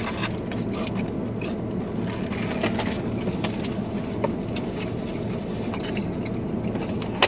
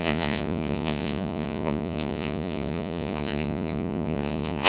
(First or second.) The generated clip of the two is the second